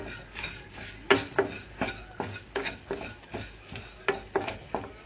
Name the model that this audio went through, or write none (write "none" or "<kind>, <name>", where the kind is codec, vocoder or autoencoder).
none